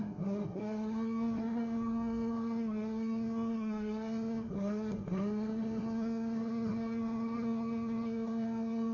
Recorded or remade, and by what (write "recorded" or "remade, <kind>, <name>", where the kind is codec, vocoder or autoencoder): remade, codec, SNAC